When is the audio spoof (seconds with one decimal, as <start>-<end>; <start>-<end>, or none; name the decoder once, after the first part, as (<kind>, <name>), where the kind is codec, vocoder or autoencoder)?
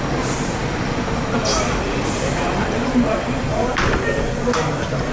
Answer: 0.6-3.7 (vocoder, BigVGAN v2)